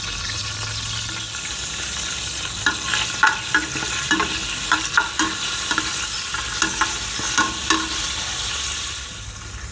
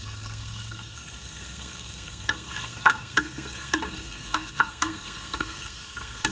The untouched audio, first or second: first